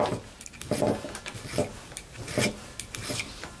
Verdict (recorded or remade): recorded